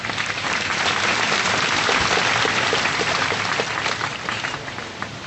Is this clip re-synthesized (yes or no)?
no